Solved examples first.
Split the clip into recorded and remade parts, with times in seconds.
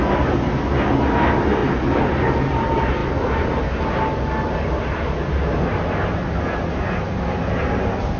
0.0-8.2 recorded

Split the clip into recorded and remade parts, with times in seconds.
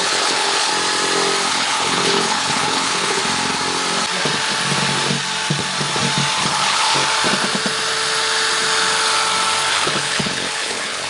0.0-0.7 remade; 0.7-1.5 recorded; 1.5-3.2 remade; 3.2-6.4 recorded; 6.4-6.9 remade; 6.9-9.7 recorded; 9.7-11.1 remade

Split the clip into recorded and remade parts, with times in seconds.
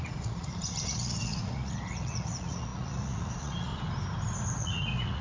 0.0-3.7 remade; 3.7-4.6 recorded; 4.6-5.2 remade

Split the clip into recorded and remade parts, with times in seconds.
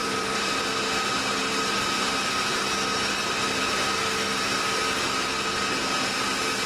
0.0-0.6 remade; 0.6-6.7 recorded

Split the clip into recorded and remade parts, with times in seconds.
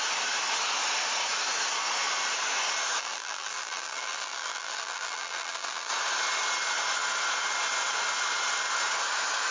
0.0-3.0 recorded; 3.0-5.9 remade; 5.9-9.5 recorded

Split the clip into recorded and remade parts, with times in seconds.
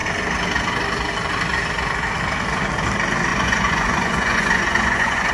0.0-3.3 recorded; 3.3-5.3 remade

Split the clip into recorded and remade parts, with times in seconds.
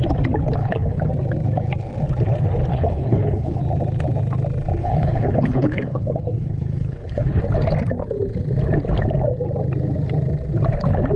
0.0-0.6 recorded; 0.6-1.1 remade; 1.1-2.7 recorded; 2.7-3.6 remade; 3.6-4.8 recorded; 4.8-7.4 remade; 7.4-11.2 recorded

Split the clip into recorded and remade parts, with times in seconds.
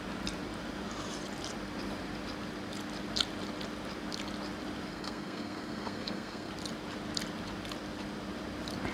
0.0-4.9 recorded; 4.9-6.5 remade; 6.5-8.9 recorded